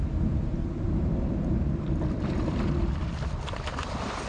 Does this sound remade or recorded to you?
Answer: remade